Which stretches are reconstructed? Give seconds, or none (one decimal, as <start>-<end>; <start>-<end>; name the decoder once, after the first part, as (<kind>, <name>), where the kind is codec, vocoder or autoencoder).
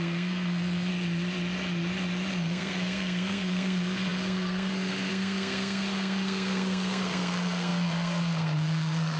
0.0-0.9 (codec, SNAC); 2.3-9.2